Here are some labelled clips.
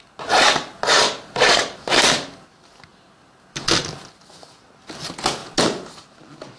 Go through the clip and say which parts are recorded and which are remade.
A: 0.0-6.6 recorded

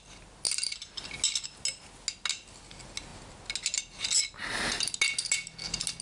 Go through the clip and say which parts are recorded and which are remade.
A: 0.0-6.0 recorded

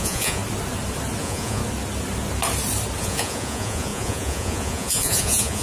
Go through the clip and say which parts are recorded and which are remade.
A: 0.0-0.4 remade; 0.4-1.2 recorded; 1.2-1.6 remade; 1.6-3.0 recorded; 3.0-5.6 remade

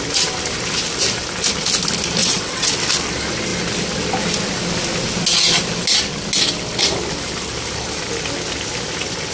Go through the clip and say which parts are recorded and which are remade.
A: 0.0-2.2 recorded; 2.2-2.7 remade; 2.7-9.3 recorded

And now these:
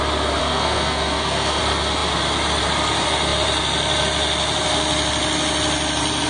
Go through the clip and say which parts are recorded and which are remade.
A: 0.0-0.4 recorded; 0.4-1.6 remade; 1.6-6.3 recorded

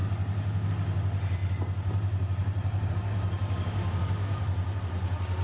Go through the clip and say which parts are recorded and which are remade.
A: 0.0-3.4 recorded; 3.4-4.4 remade; 4.4-5.4 recorded

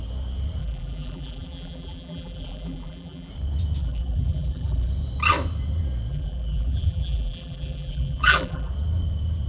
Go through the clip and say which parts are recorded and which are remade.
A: 0.0-0.6 recorded; 0.6-3.3 remade; 3.3-3.8 recorded; 3.8-4.9 remade; 4.9-6.1 recorded; 6.1-8.7 remade; 8.7-9.5 recorded

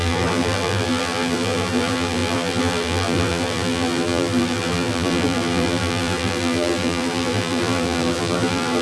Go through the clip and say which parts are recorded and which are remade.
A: 0.0-8.8 remade